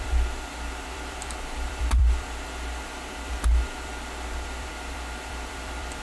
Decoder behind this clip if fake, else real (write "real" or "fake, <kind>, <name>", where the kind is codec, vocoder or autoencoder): fake, vocoder, BigVGAN v2